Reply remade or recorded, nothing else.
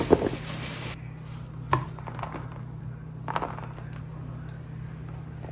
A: recorded